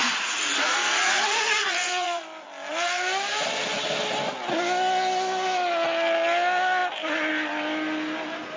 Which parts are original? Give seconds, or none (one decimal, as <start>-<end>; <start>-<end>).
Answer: 2.2-8.6